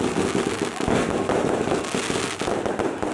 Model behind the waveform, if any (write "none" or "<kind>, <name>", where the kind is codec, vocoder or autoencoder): none